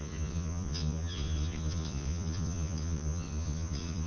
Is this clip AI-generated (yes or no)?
yes